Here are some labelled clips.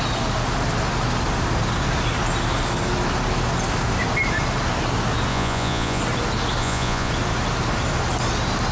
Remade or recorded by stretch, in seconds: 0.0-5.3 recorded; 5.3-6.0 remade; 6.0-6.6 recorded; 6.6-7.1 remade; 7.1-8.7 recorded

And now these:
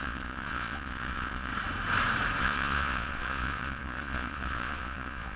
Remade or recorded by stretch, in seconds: 0.0-1.5 remade; 1.5-2.4 recorded; 2.4-5.4 remade

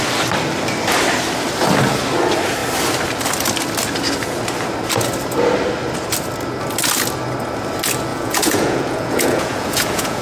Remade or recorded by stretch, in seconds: 0.0-8.1 recorded; 8.1-10.2 remade